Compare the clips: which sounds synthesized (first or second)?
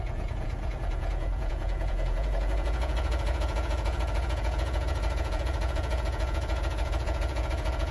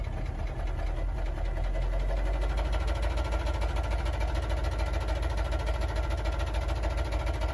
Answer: first